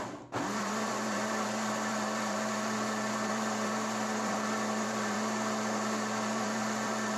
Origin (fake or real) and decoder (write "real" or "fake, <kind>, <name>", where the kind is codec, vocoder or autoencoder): fake, vocoder, BigVGAN v2